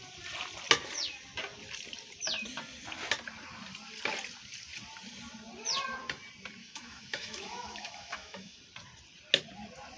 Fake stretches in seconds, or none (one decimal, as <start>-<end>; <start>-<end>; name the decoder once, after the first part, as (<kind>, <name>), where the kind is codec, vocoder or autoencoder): 6.6-8.6 (autoencoder, DAC-VAE)